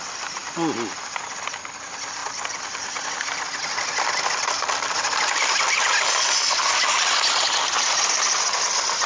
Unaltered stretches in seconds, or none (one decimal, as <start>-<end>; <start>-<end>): 0.0-9.1